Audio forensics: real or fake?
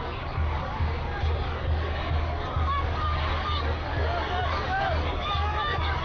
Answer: fake